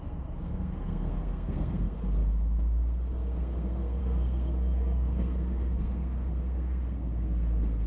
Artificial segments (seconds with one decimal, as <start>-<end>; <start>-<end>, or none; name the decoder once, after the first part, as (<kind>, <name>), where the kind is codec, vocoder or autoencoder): 0.0-7.9 (codec, SNAC)